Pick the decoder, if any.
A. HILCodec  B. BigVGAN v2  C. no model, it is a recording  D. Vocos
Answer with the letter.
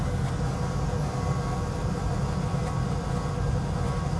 C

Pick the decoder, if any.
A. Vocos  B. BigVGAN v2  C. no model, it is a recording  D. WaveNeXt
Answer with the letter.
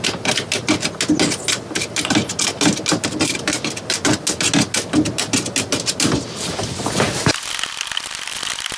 C